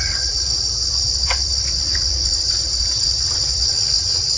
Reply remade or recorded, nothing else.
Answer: remade